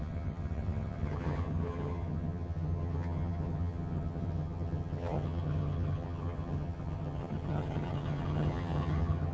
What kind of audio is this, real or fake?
fake